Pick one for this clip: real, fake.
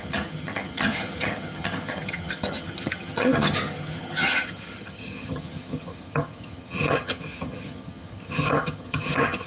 fake